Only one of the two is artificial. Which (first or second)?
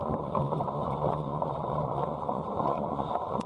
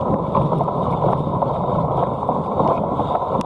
first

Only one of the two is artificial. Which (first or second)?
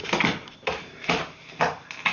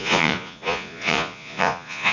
second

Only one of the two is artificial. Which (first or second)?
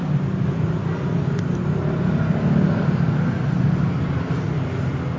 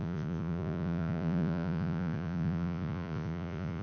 second